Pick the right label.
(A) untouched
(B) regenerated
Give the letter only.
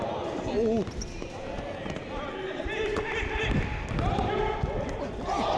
A